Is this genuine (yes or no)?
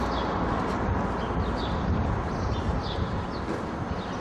yes